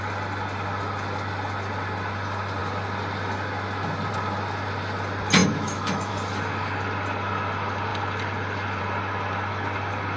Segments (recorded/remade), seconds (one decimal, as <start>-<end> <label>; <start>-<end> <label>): 0.0-5.4 recorded; 5.4-6.1 remade; 6.1-10.2 recorded